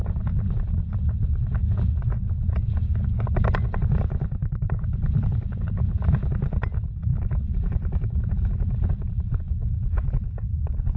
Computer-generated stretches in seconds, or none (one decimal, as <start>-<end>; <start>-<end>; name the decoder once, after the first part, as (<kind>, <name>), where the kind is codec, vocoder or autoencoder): 4.4-5.9 (vocoder, BigVGAN v2); 7.1-9.4